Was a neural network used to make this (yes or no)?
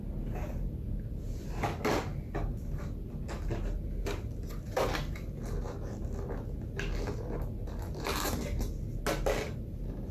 no